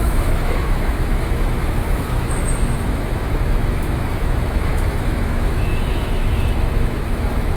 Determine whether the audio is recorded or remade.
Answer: remade